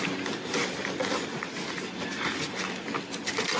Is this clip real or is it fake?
real